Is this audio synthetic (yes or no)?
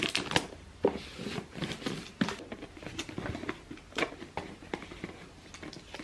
no